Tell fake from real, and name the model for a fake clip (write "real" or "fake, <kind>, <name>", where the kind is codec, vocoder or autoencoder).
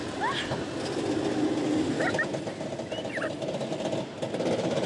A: real